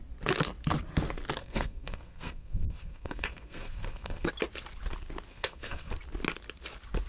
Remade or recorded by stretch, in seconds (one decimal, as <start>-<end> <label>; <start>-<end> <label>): 0.0-1.4 recorded; 1.4-4.3 remade; 4.3-5.3 recorded; 5.3-5.9 remade; 5.9-7.1 recorded